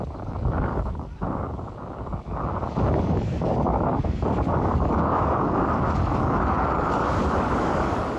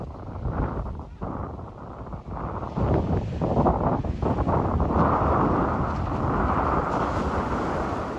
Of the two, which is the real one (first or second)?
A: second